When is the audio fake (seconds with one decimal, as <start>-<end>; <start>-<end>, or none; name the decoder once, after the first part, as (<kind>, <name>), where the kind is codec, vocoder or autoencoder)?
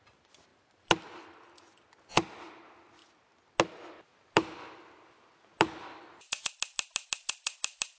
none